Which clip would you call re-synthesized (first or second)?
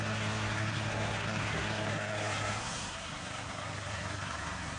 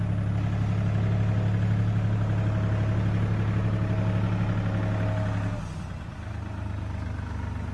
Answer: first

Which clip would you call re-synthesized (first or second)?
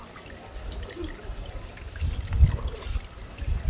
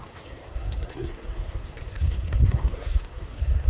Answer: second